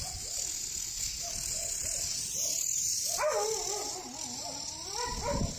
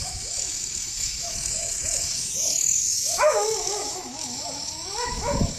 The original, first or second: first